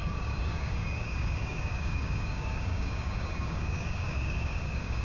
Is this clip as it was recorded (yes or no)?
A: no